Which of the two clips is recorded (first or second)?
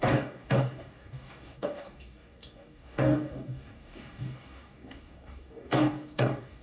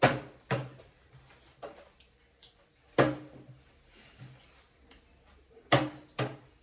second